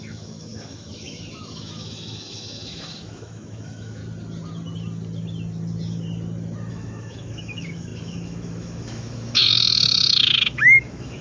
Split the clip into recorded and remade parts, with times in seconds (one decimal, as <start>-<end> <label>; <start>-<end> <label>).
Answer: 0.0-4.0 remade; 4.0-6.7 recorded; 6.7-11.2 remade

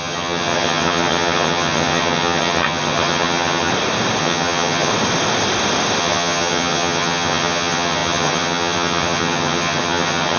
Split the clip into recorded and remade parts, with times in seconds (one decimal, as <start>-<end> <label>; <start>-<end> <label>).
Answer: 0.0-3.7 remade; 3.7-4.2 recorded; 4.2-4.9 remade; 4.9-6.0 recorded; 6.0-10.4 remade

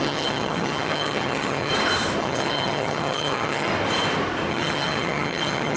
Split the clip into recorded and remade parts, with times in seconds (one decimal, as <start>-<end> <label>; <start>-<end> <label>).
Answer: 0.0-1.7 remade; 1.7-2.2 recorded; 2.2-3.7 remade; 3.7-4.5 recorded; 4.5-5.8 remade

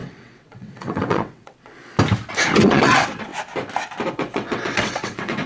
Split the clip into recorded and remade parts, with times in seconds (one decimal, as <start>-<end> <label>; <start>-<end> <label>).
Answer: 0.0-1.8 remade; 1.8-2.6 recorded; 2.6-3.3 remade; 3.3-4.1 recorded; 4.1-5.5 remade

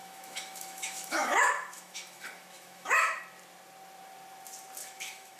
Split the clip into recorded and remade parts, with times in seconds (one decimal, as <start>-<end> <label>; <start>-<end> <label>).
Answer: 0.0-3.2 remade; 3.2-4.8 recorded; 4.8-5.4 remade

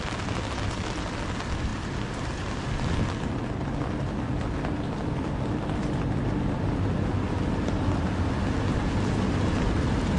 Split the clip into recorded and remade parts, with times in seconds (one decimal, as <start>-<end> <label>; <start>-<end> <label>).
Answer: 0.0-10.2 recorded

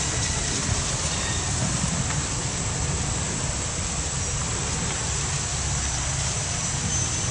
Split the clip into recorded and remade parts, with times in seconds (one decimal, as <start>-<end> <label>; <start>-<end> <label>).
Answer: 0.0-7.3 recorded

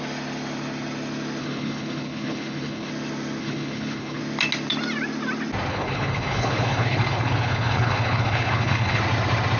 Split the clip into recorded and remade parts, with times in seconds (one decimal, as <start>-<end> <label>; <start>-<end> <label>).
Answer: 0.0-1.4 recorded; 1.4-2.9 remade; 2.9-3.4 recorded; 3.4-4.2 remade; 4.2-5.7 recorded; 5.7-9.0 remade; 9.0-9.6 recorded